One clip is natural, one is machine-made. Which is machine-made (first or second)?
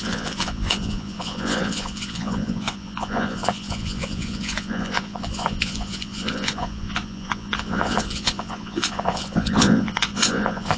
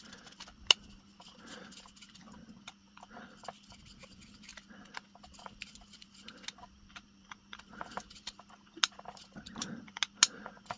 first